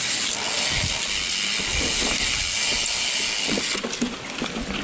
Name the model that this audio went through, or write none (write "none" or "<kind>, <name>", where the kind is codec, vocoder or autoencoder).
none